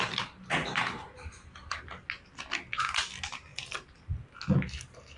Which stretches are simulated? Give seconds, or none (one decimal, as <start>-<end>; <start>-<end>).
0.6-1.8; 3.5-4.4